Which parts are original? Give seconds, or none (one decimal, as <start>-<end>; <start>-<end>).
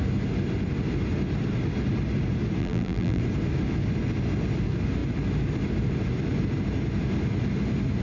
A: 0.0-2.6; 3.2-8.0